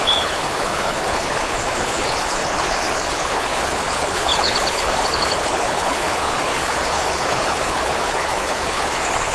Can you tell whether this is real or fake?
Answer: fake